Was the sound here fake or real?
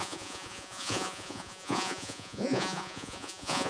fake